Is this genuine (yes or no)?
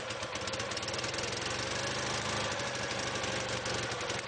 yes